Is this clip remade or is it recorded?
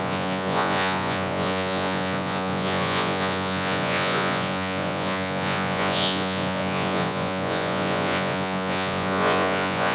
remade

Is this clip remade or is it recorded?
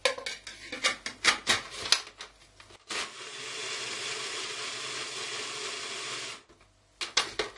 recorded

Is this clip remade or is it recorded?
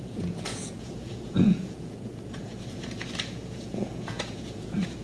remade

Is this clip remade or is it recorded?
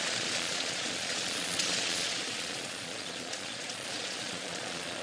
remade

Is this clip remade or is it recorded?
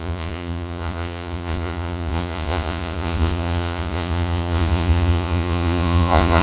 remade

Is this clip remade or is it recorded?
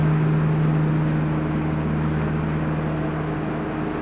recorded